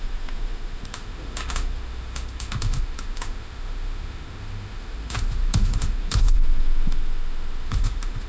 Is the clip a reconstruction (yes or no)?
yes